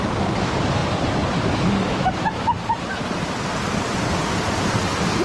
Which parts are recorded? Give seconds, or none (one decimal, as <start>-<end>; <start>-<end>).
0.0-5.2